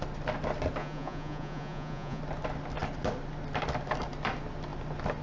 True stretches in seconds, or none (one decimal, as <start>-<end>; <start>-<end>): 0.0-0.8; 2.2-5.2